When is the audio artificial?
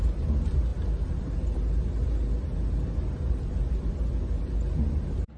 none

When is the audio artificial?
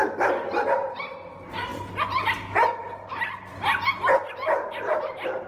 none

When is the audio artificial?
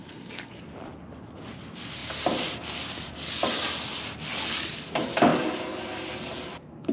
0.0-0.6 (codec, SNAC)